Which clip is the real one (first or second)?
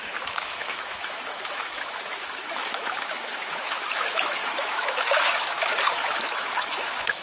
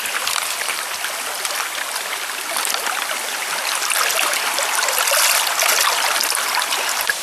second